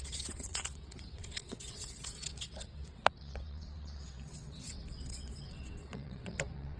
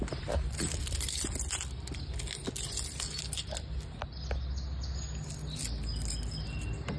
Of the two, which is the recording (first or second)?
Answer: second